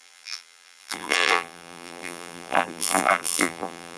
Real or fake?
fake